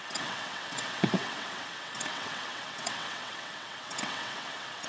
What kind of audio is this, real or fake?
fake